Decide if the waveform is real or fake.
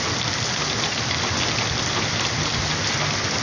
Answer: real